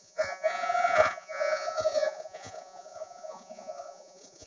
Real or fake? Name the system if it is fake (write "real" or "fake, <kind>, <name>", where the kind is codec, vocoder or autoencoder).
fake, vocoder, Vocos